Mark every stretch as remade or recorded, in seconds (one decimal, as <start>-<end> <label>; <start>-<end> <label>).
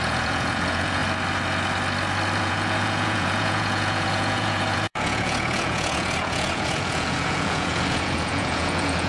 0.0-1.0 remade; 1.0-2.4 recorded; 2.4-9.1 remade